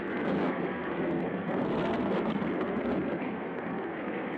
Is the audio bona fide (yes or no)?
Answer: no